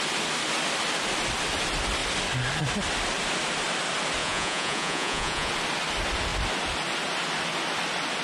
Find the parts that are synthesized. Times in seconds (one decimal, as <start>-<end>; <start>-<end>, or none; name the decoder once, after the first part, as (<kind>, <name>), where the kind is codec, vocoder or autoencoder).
4.2-5.5 (vocoder, Vocos)